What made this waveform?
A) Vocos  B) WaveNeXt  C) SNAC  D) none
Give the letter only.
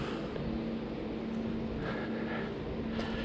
D